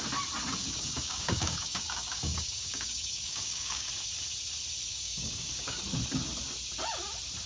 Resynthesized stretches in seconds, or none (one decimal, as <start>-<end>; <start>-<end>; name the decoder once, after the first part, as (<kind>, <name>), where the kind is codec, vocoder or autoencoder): 0.6-3.9 (codec, DAC); 4.9-5.8